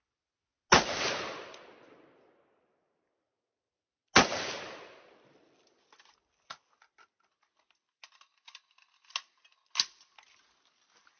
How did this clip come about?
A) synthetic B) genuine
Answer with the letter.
B